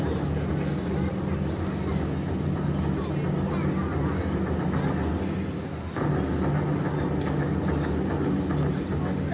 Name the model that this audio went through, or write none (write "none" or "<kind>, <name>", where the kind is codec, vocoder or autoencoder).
none